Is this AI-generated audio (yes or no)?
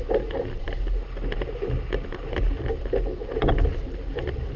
no